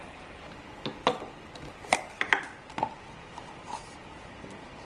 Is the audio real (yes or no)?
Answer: yes